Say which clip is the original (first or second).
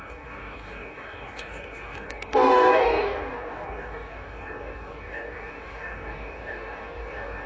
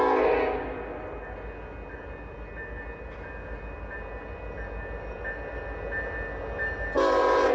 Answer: second